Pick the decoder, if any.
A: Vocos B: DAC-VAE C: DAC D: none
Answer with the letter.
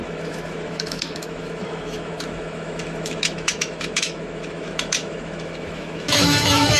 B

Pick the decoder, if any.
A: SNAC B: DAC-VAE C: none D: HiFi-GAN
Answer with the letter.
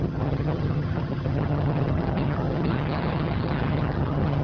D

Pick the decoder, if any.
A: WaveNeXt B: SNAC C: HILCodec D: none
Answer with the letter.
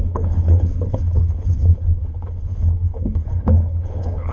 C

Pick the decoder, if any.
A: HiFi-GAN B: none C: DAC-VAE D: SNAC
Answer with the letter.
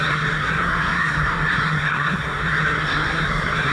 D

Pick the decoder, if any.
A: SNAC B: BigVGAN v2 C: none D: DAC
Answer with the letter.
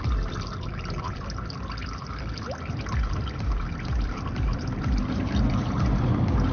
B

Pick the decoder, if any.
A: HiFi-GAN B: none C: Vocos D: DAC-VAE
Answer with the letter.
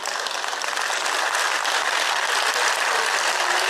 B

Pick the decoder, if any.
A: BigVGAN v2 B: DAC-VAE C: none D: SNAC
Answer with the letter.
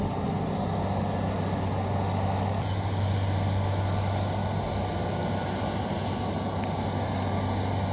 C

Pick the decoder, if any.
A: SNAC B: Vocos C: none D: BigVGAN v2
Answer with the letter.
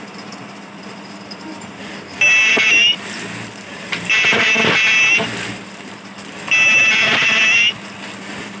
D